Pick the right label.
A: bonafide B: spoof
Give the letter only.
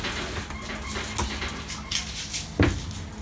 A